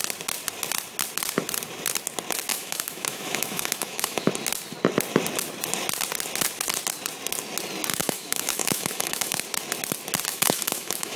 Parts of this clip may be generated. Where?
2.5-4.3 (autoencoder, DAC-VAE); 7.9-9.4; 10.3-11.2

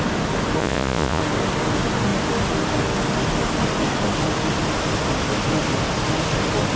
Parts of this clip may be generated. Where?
0.6-1.2 (vocoder, Vocos)

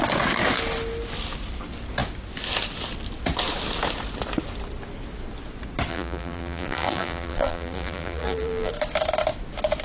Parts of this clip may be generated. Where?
5.9-8.7 (vocoder, BigVGAN v2)

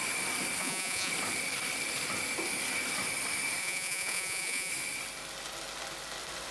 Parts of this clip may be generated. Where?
0.6-1.1 (vocoder, Vocos); 3.6-4.7

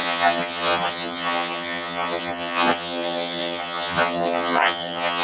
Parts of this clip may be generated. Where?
0.0-5.2 (vocoder, HiFi-GAN)